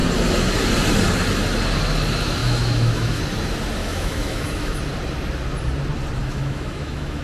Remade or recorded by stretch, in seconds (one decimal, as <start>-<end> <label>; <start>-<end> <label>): 0.0-2.4 recorded; 2.4-3.2 remade; 3.2-3.8 recorded; 3.8-4.8 remade; 4.8-6.2 recorded; 6.2-7.2 remade